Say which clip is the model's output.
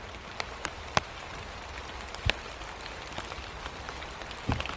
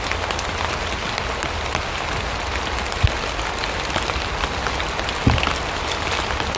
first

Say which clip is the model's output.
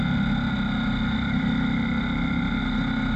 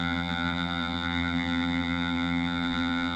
second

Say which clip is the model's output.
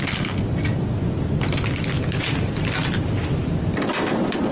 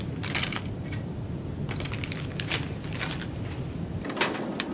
second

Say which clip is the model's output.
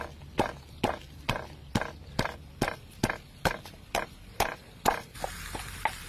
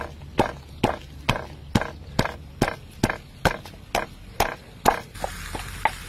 first